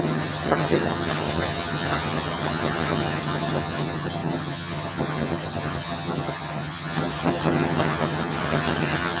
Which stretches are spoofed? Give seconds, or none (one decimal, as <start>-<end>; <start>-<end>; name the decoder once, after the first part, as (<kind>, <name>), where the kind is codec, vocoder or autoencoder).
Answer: 0.0-9.2 (vocoder, HiFi-GAN)